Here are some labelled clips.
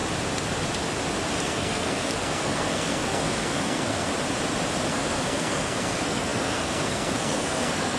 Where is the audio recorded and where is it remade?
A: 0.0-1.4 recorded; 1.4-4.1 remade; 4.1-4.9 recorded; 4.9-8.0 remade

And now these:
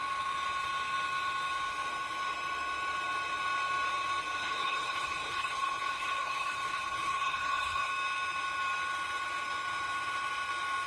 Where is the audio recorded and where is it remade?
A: 0.0-4.4 recorded; 4.4-7.9 remade; 7.9-10.9 recorded